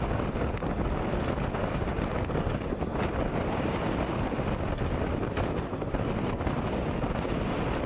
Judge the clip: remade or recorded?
recorded